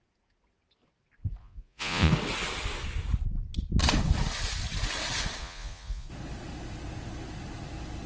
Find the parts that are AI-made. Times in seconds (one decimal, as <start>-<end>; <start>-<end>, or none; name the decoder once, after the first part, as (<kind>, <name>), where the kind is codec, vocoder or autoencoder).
1.4-2.1 (vocoder, Vocos); 5.4-6.1

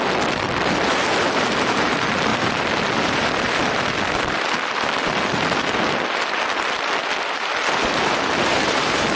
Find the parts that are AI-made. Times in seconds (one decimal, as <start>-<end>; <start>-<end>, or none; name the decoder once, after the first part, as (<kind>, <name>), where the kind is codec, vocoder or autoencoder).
none

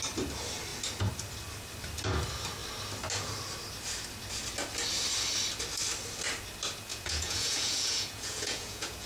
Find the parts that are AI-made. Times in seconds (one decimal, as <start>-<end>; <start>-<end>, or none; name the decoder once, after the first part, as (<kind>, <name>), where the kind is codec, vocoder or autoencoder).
6.9-9.1 (vocoder, Vocos)

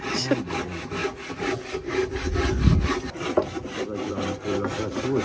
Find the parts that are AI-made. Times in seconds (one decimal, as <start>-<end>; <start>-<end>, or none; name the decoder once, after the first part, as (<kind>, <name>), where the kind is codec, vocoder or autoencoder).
none

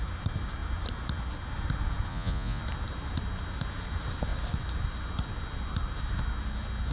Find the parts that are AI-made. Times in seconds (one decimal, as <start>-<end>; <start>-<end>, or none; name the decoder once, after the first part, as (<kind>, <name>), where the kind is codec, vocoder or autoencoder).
2.1-2.6 (vocoder, Vocos)

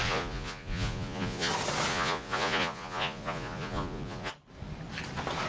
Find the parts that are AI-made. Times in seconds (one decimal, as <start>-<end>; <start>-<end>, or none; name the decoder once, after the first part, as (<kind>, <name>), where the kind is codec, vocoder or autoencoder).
0.0-1.5 (vocoder, Vocos); 1.9-4.3